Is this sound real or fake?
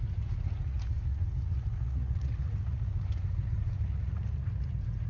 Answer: fake